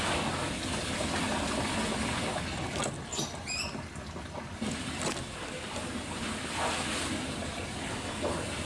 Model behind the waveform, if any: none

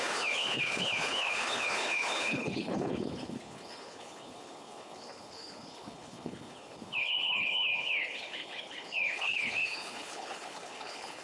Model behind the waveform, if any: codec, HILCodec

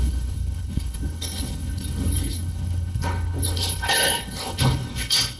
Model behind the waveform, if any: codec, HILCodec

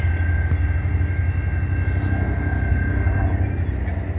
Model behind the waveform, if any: none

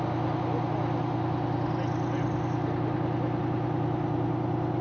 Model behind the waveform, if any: none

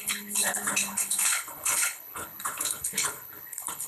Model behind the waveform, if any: codec, HILCodec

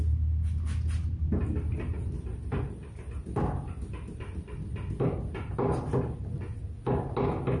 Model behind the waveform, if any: none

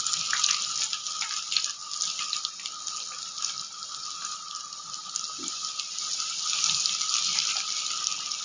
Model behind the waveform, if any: none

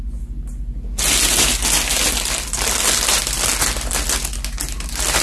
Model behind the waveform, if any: none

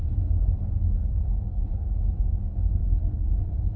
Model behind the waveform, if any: codec, HILCodec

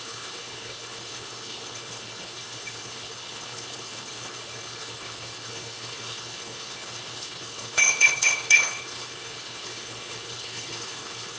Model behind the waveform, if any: codec, HILCodec